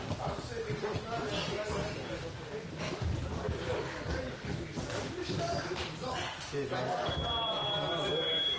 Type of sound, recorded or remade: recorded